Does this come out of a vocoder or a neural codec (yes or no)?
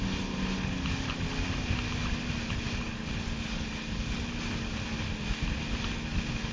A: no